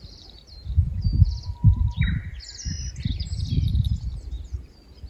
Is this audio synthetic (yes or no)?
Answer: yes